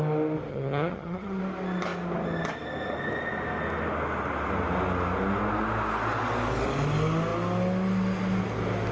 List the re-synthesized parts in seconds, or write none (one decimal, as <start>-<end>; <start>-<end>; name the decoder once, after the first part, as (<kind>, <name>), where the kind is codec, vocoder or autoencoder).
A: 0.5-1.4 (vocoder, HiFi-GAN)